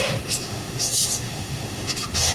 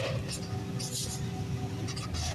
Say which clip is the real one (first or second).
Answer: second